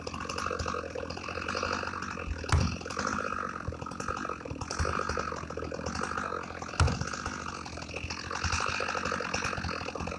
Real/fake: real